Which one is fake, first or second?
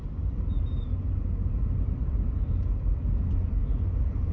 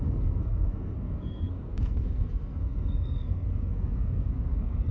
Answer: second